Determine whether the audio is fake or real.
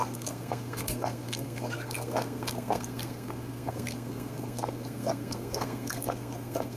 fake